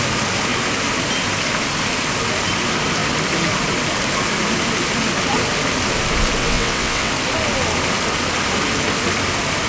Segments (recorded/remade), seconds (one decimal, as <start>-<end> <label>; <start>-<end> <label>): 0.0-6.4 recorded; 6.4-7.1 remade; 7.1-9.7 recorded